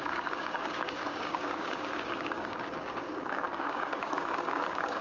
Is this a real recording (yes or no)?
no